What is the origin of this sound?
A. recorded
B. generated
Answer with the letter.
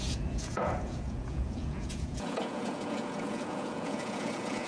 B